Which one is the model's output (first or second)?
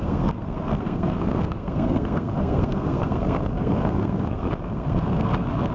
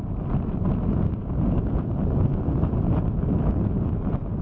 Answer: first